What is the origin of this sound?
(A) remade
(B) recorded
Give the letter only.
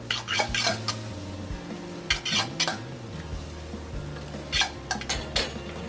B